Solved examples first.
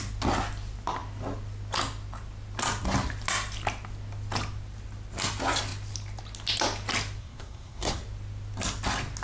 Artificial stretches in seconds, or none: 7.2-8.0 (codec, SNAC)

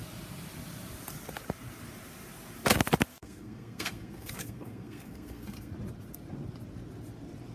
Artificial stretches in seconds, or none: 3.1-5.7 (codec, SNAC)

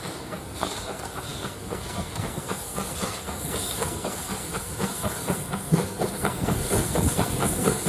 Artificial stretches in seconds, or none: 0.0-7.9 (codec, SNAC)